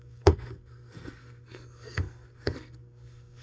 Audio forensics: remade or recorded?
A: remade